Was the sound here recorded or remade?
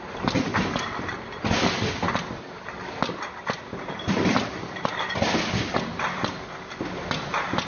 recorded